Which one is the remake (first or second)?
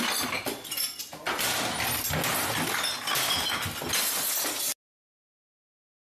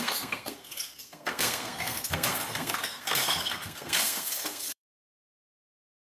second